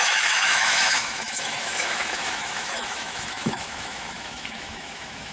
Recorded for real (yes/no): no